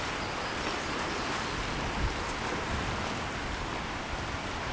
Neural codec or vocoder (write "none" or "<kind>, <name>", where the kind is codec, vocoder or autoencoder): none